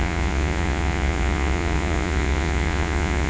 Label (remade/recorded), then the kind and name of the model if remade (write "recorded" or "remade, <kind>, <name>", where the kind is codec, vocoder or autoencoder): remade, vocoder, Vocos